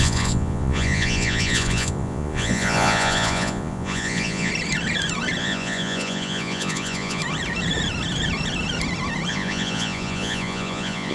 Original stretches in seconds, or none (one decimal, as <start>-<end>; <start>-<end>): 4.5-5.4; 7.2-9.3